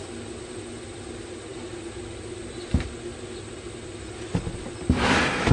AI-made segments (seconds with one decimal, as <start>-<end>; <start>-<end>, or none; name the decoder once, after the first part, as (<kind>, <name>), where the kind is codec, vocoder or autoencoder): none